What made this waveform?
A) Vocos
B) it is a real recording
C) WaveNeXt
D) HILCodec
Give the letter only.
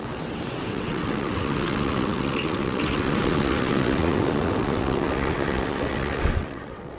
C